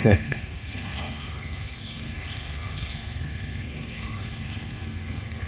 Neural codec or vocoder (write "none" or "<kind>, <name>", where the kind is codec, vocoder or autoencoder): codec, SNAC